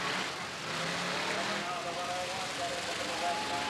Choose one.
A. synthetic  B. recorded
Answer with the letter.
B